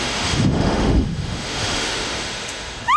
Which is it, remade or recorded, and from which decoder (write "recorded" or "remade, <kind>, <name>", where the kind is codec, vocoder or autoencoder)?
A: remade, autoencoder, DAC-VAE